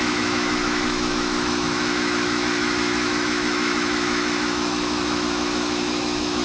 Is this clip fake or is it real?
fake